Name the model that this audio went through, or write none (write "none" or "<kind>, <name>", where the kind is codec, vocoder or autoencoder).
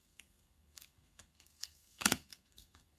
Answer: codec, SNAC